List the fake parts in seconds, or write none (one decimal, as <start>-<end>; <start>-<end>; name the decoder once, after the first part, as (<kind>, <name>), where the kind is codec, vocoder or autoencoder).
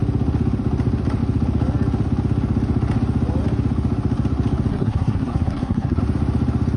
4.7-6.0 (codec, SNAC)